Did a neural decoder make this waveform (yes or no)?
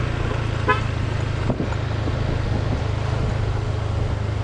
no